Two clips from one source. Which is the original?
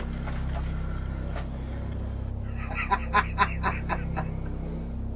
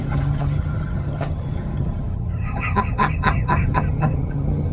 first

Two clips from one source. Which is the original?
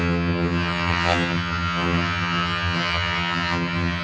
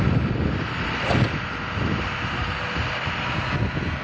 second